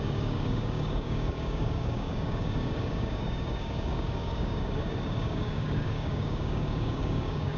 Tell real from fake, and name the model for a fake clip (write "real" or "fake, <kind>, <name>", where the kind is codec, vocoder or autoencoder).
fake, codec, DAC